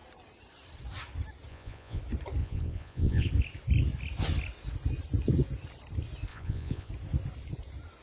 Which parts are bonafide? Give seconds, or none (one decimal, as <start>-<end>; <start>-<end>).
0.0-1.5; 2.0-2.4; 3.3-6.3; 6.9-8.0